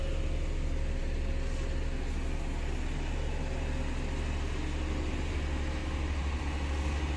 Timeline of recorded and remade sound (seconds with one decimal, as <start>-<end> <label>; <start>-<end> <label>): 0.0-5.8 recorded; 5.8-6.4 remade; 6.4-7.2 recorded